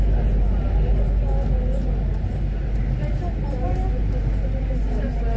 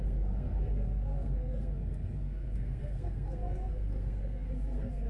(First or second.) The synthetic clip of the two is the second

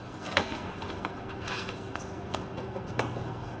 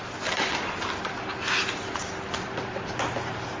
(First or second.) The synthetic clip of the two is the first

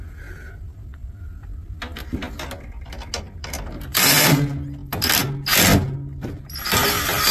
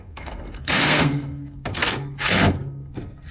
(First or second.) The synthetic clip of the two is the second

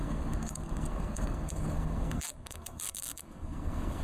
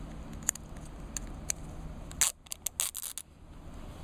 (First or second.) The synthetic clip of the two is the first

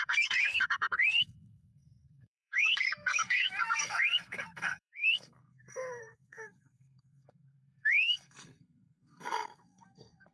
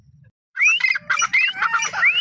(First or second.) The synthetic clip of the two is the first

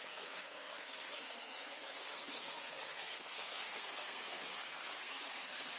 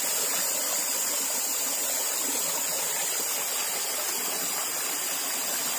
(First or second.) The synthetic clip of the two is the first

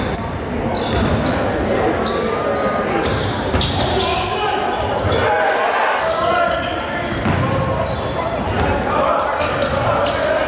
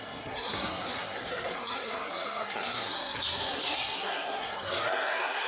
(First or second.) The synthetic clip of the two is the second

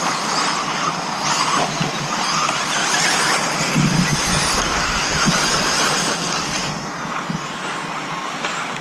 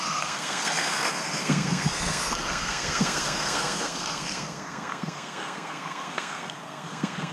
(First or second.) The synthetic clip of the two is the second